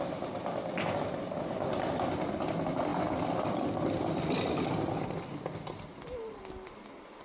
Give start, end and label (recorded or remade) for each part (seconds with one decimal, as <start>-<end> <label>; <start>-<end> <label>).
0.0-7.2 recorded

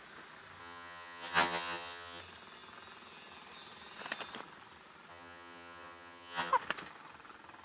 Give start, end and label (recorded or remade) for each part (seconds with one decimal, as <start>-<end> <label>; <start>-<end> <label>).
0.0-0.6 recorded; 0.6-2.2 remade; 2.2-5.1 recorded; 5.1-6.5 remade; 6.5-7.6 recorded